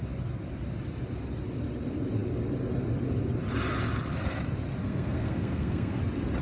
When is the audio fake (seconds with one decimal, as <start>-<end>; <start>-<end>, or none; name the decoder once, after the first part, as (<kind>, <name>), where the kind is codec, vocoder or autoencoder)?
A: 4.8-6.0 (codec, SNAC)